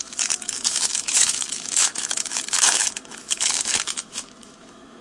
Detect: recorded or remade remade